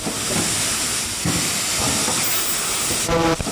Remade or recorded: recorded